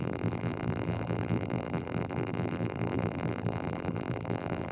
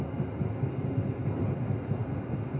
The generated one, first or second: first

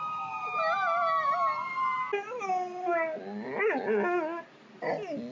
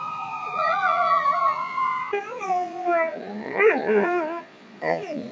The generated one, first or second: second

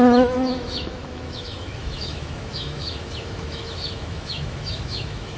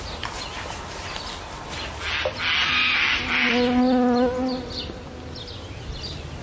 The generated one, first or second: first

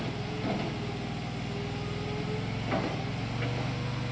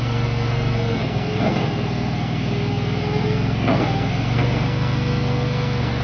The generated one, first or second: second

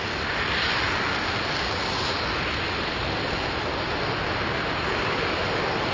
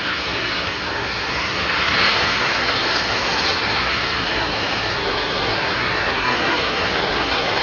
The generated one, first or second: second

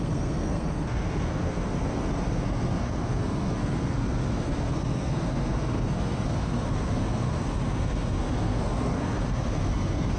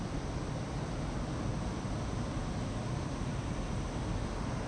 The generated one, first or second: first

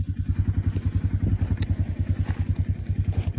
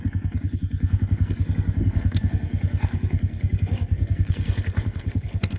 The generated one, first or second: second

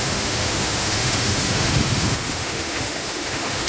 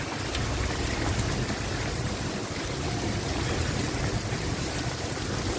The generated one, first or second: first